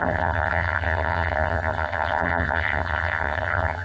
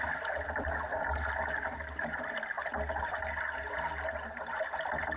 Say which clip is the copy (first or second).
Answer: first